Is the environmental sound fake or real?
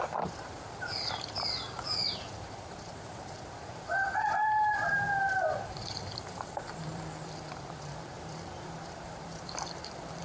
fake